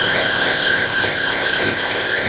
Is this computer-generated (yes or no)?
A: yes